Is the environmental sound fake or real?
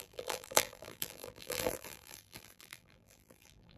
fake